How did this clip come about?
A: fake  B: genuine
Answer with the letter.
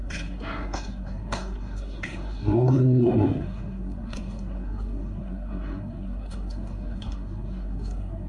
A